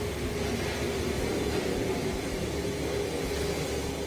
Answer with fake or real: real